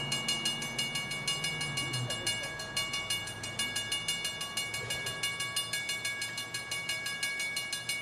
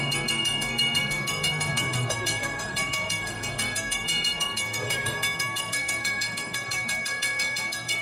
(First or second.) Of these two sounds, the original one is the first